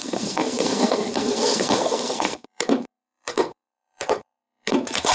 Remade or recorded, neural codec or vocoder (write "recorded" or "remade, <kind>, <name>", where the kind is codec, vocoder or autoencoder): remade, codec, SNAC